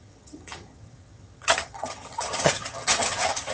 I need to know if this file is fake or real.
fake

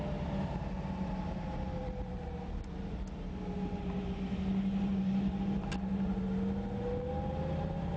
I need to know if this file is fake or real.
real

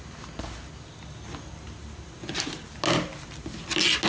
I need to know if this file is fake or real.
real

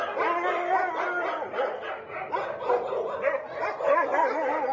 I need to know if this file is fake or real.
real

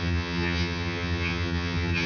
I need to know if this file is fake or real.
fake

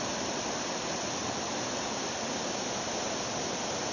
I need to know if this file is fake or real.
real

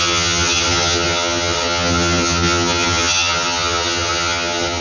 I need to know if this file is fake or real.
fake